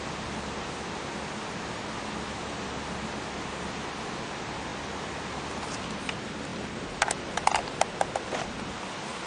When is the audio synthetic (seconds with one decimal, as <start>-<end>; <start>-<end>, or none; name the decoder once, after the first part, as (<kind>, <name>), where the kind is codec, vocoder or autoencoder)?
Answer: none